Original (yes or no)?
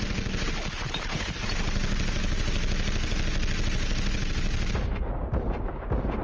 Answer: yes